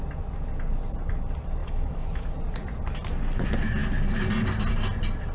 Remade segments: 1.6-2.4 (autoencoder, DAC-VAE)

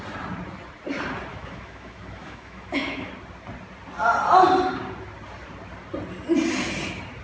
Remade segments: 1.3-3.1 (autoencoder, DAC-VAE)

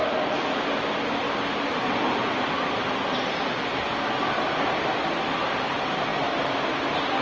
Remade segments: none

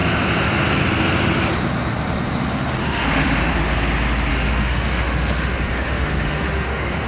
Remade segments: 2.8-3.5 (autoencoder, DAC-VAE); 4.3-7.1

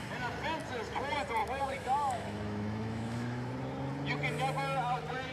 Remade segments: 1.4-3.5 (autoencoder, DAC-VAE)